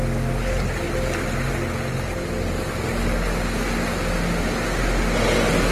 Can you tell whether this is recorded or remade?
recorded